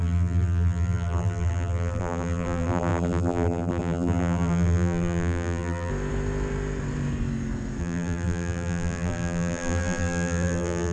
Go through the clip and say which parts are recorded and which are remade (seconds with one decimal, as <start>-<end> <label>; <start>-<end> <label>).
0.0-5.9 remade; 5.9-7.8 recorded; 7.8-10.9 remade

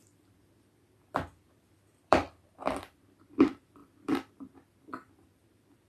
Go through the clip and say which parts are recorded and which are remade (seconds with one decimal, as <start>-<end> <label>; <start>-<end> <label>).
0.0-2.2 remade; 2.2-3.3 recorded; 3.3-5.9 remade

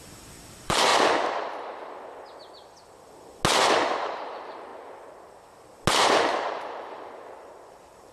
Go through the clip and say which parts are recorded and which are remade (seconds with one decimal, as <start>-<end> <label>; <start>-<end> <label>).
0.0-0.9 remade; 0.9-3.7 recorded; 3.7-4.7 remade; 4.7-6.0 recorded; 6.0-8.1 remade

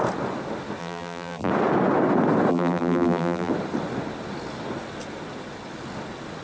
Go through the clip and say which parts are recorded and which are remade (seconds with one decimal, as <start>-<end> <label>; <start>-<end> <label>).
0.0-0.8 recorded; 0.8-1.5 remade; 1.5-2.5 recorded; 2.5-3.5 remade; 3.5-6.4 recorded

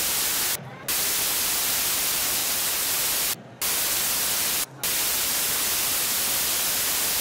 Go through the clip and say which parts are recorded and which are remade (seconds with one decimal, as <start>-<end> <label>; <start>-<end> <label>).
0.0-2.4 recorded; 2.4-2.9 remade; 2.9-7.2 recorded

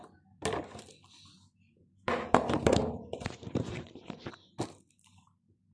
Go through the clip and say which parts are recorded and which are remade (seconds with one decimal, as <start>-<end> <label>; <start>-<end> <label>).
0.0-1.8 recorded; 1.8-3.7 remade; 3.7-5.7 recorded